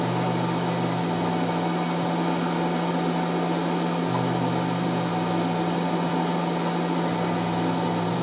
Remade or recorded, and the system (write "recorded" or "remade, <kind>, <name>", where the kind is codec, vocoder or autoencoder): recorded